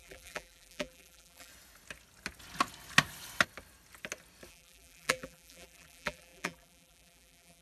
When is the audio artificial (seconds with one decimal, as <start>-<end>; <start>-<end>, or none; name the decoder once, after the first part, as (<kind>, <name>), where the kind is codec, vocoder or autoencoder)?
0.0-1.5 (vocoder, BigVGAN v2); 4.5-7.6